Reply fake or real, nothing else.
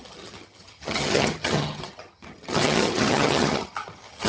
fake